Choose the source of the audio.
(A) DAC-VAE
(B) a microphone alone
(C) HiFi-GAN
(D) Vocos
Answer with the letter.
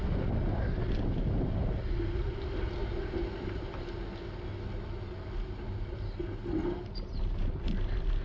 B